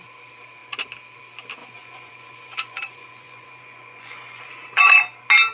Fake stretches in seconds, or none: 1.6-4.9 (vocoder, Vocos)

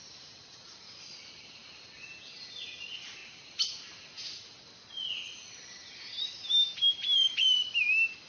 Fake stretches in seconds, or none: 0.0-1.6 (vocoder, BigVGAN v2); 2.5-3.2; 6.1-8.3

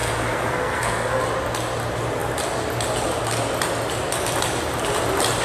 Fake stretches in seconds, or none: 0.0-1.2 (codec, SNAC)

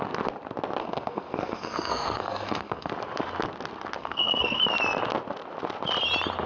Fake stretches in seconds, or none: 0.8-2.9 (codec, SNAC); 4.0-4.6

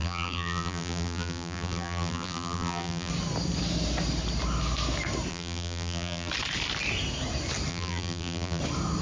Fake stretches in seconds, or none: 0.0-3.1 (vocoder, BigVGAN v2); 5.3-6.3; 7.7-8.6